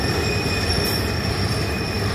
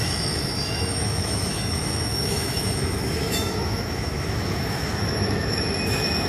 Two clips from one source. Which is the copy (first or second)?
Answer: second